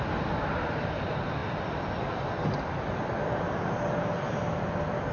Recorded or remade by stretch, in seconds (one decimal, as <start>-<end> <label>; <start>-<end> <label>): 0.0-5.1 recorded